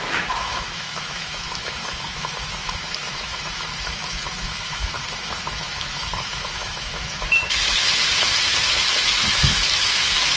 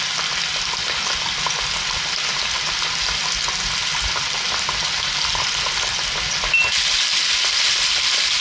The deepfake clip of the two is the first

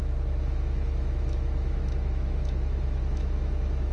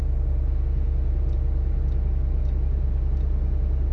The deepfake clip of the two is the first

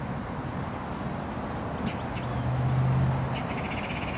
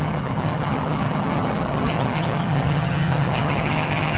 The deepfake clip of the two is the second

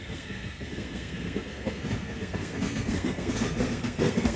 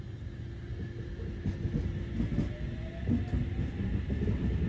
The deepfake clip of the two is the first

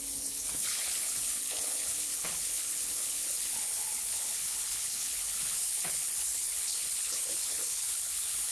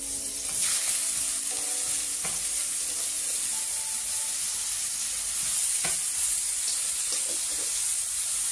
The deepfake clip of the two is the first